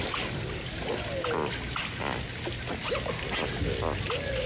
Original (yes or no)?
yes